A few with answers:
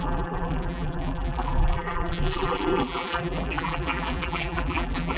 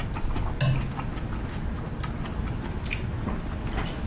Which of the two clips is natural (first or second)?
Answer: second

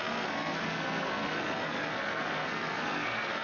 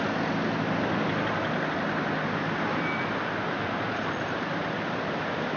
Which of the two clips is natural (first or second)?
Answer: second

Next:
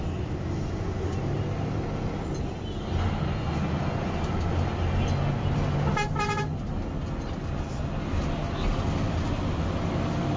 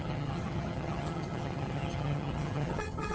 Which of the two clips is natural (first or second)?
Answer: first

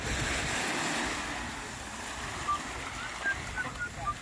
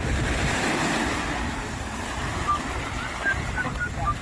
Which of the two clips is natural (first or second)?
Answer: first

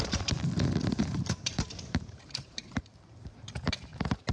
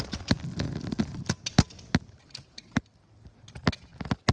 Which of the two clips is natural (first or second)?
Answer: second